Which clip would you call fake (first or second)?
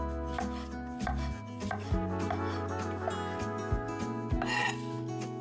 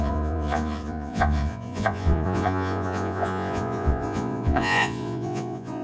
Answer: second